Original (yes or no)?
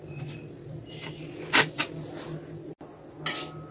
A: yes